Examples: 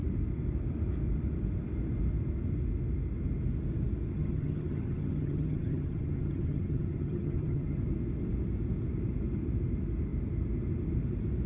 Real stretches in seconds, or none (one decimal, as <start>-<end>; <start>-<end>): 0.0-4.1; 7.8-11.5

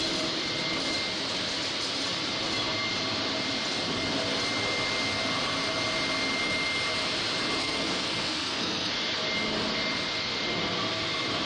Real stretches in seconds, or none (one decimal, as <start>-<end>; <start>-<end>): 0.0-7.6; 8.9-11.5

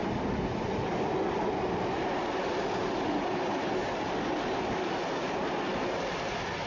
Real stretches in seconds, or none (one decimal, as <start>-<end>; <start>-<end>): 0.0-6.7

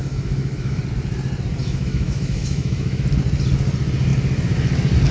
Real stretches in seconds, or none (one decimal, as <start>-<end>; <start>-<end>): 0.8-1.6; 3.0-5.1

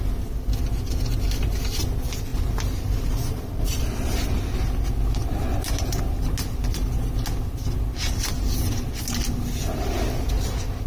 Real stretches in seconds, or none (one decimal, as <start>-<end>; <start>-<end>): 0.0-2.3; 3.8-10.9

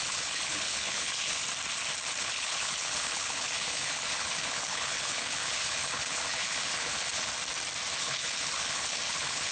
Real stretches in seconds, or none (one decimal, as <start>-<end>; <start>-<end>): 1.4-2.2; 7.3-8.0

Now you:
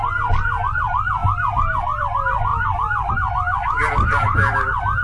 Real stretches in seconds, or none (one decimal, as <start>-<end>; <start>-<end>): 0.0-5.0